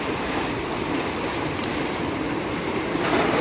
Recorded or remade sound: recorded